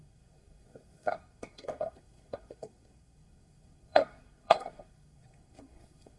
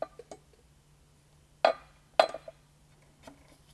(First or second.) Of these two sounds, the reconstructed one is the first